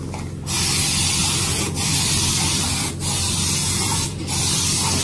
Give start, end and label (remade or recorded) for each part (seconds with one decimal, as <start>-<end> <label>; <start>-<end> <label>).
0.0-3.6 recorded; 3.6-4.2 remade; 4.2-5.0 recorded